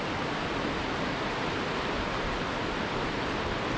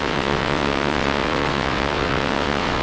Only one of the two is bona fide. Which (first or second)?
first